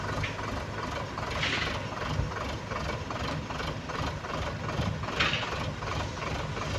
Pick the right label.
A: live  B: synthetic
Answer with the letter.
A